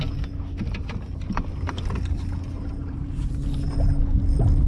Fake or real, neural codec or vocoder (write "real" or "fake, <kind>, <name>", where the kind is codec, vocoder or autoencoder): real